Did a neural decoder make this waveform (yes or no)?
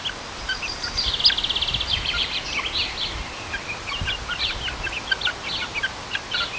no